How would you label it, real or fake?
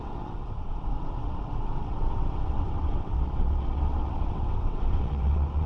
fake